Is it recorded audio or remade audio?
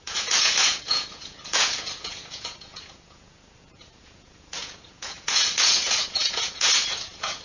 remade